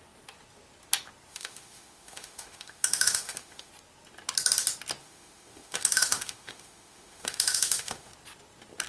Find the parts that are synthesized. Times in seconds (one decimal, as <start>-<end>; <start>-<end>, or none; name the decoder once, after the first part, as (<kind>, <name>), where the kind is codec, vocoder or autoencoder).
1.3-3.7 (autoencoder, DAC-VAE); 5.0-8.1